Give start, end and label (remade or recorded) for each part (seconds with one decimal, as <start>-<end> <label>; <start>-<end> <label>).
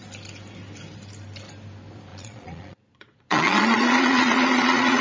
0.0-2.1 recorded; 2.1-5.0 remade